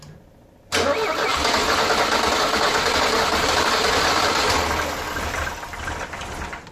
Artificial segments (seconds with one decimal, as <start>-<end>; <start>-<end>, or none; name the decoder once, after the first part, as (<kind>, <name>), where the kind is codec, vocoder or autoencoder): none